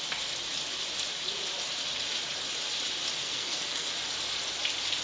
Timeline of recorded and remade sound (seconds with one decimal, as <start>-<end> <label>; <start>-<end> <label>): 0.0-3.2 recorded; 3.2-3.9 remade; 3.9-5.0 recorded